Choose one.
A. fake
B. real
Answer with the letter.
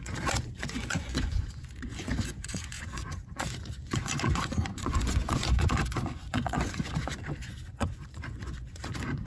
A